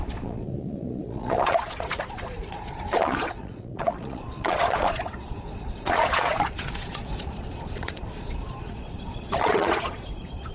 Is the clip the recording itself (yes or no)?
no